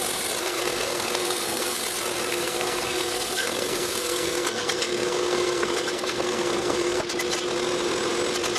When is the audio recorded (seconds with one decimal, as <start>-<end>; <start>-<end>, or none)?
0.0-0.4; 1.8-2.3; 7.0-8.6